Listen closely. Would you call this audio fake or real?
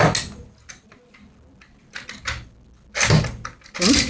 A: real